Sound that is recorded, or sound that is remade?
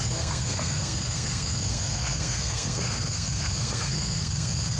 remade